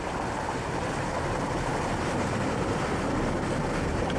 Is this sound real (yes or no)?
yes